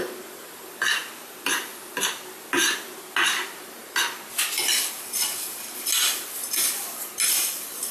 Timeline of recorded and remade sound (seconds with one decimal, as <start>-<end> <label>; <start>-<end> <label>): 0.0-7.9 recorded